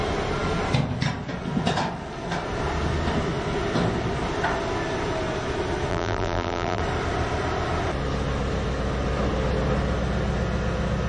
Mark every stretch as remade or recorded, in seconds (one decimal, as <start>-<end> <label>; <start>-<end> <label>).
0.0-5.9 recorded; 5.9-6.8 remade; 6.8-11.1 recorded